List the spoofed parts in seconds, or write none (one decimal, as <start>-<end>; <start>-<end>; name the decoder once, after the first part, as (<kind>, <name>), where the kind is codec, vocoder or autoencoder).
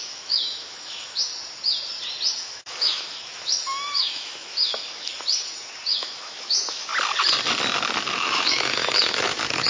0.0-1.3 (autoencoder, DAC-VAE); 2.3-5.1; 5.9-6.9; 8.1-9.7